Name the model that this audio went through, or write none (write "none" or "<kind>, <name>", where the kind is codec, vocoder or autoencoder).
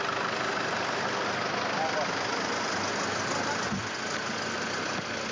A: none